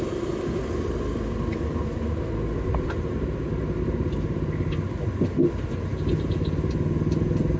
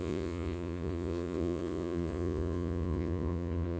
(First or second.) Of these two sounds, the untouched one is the first